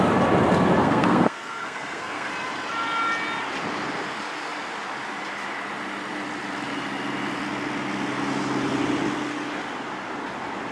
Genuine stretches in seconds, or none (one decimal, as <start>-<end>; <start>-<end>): 0.0-0.8; 2.3-10.7